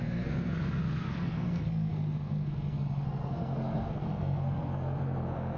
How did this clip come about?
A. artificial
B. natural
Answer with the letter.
A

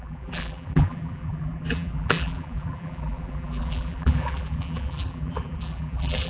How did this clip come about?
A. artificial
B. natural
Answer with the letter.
A